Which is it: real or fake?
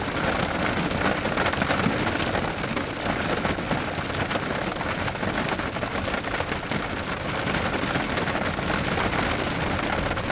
real